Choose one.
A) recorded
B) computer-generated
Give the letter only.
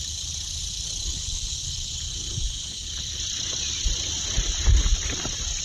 B